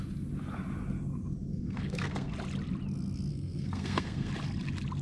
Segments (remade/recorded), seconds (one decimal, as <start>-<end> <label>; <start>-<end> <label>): 0.0-1.5 recorded; 1.5-2.3 remade; 2.3-3.3 recorded; 3.3-4.3 remade; 4.3-5.0 recorded